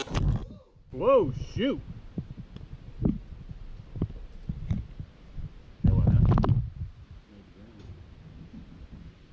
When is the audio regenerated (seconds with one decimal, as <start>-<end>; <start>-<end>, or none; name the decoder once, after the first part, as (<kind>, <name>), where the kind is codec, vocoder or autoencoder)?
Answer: none